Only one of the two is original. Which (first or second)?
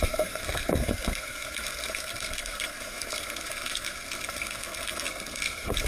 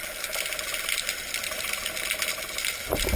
second